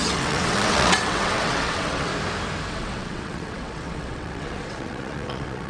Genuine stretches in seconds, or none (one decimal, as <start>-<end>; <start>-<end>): 2.1-2.7